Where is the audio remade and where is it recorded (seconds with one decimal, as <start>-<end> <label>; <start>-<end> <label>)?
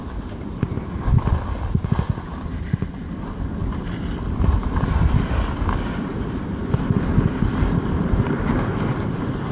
0.0-9.5 recorded